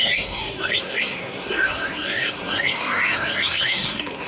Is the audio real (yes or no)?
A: no